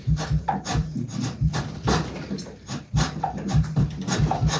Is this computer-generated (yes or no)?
yes